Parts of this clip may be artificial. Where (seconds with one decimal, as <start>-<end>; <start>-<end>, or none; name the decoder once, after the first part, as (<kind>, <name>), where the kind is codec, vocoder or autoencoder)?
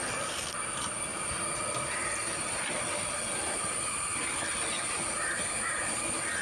none